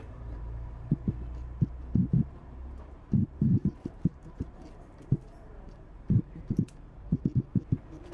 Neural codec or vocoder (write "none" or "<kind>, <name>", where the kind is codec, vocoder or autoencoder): vocoder, BigVGAN v2